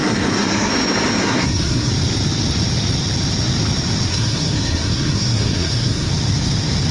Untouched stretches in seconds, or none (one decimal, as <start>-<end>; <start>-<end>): 0.7-1.2; 1.9-4.1; 6.1-6.9